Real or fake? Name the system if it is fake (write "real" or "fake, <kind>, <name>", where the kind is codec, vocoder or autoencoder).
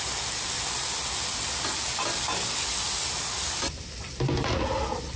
real